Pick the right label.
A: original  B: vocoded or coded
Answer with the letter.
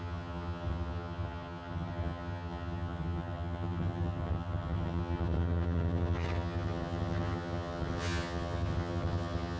B